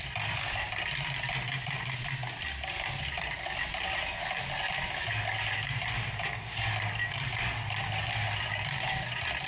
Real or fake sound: real